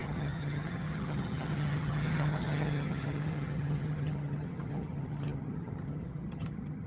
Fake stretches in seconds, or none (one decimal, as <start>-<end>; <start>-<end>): 0.0-6.9